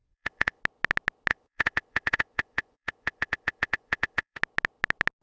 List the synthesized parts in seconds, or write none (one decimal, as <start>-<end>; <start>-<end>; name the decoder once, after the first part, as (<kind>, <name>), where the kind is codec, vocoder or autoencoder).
0.0-0.6 (vocoder, Vocos); 1.3-4.4

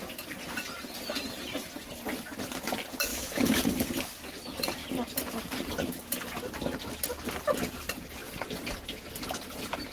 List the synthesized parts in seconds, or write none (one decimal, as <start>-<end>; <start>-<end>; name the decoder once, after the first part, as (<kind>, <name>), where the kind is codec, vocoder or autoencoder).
3.1-3.9 (autoencoder, DAC-VAE)

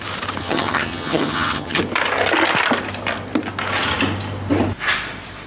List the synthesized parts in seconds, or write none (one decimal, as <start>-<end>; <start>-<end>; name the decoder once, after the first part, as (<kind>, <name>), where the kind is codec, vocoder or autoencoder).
0.4-1.8 (vocoder, HiFi-GAN)

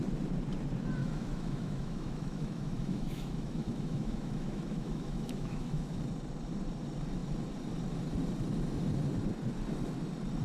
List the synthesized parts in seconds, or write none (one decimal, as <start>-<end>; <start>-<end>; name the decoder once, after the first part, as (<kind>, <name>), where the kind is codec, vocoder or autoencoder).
1.0-6.0 (autoencoder, DAC-VAE)